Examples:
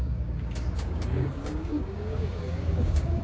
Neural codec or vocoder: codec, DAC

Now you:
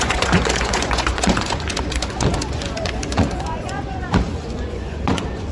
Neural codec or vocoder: vocoder, Vocos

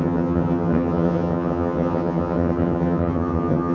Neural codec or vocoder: vocoder, HiFi-GAN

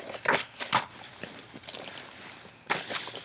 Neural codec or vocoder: vocoder, BigVGAN v2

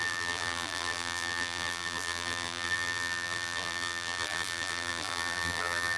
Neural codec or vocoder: vocoder, BigVGAN v2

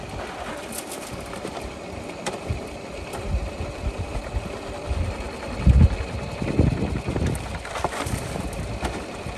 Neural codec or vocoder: none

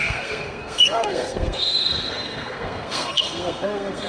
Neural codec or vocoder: codec, SNAC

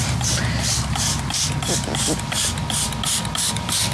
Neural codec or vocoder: none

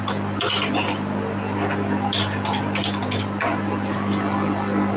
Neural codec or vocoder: none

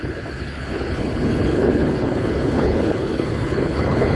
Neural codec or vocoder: codec, HILCodec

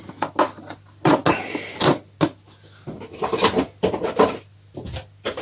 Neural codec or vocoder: none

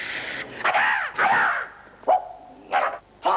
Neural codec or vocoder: none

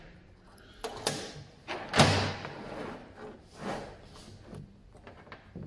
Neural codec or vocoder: none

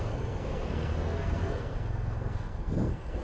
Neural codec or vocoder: codec, SNAC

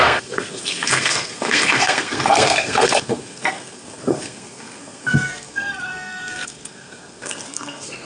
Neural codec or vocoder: codec, SNAC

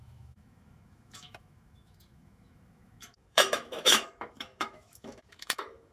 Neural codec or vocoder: autoencoder, DAC-VAE